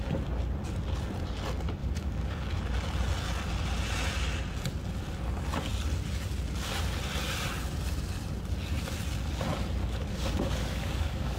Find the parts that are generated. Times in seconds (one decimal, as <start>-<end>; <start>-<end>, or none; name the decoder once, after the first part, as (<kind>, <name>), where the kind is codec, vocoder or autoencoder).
1.8-2.6 (codec, DAC); 9.8-11.4